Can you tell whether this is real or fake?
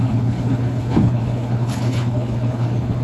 fake